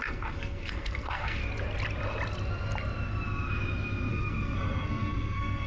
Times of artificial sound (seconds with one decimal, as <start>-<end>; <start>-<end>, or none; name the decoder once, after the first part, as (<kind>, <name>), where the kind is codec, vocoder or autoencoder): 0.0-1.4 (codec, SNAC); 4.1-5.7